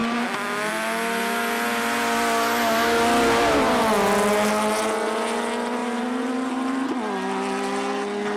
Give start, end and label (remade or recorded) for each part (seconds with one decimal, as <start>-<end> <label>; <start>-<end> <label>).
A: 0.0-5.8 recorded; 5.8-6.9 remade; 6.9-8.4 recorded